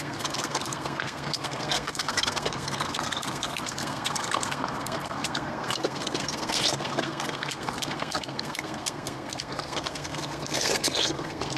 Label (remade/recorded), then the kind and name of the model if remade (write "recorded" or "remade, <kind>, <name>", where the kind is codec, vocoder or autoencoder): remade, codec, SNAC